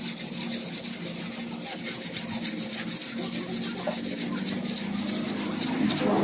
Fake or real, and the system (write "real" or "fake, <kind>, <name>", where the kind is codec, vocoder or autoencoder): real